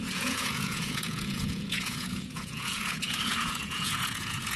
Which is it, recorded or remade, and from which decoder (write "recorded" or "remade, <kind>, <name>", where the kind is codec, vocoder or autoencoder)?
remade, vocoder, Vocos